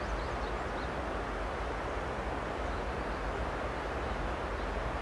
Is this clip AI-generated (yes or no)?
no